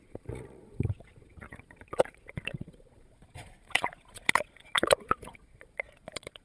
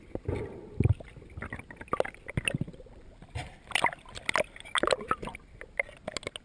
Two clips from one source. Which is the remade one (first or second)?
first